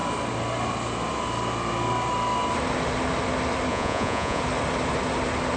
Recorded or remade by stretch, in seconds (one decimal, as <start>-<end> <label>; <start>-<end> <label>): 0.0-3.7 recorded; 3.7-4.4 remade; 4.4-5.6 recorded